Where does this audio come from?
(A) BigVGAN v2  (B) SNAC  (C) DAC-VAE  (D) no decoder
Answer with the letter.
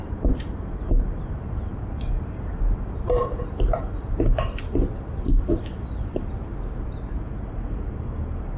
A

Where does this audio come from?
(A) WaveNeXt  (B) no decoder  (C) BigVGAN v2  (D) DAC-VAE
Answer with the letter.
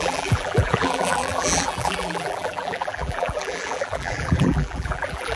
C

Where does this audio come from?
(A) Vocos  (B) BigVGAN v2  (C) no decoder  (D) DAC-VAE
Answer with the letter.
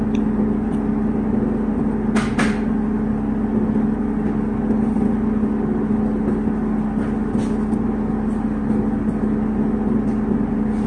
C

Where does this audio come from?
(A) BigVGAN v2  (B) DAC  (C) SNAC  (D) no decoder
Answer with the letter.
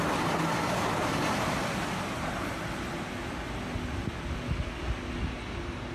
D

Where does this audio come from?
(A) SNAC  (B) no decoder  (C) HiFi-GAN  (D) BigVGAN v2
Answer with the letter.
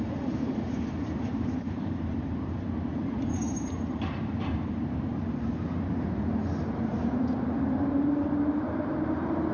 D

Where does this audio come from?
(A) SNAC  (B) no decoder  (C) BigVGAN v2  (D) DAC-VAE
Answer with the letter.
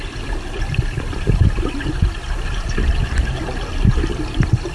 B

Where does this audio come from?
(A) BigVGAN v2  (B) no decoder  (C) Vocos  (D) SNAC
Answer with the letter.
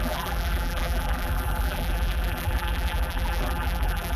A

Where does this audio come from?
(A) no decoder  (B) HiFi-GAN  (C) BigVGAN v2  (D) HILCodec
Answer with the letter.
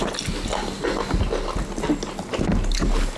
A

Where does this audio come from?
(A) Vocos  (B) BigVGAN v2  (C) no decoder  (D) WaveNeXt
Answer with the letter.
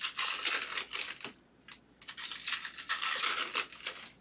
C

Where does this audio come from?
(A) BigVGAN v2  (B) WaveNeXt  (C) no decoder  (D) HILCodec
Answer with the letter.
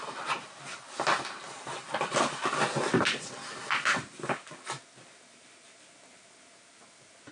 C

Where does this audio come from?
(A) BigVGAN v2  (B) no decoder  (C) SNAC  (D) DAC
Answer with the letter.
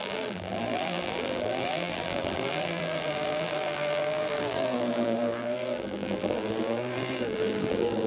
A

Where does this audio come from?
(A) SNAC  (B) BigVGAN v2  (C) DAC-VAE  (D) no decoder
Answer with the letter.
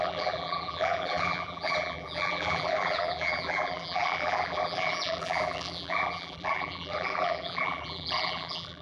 B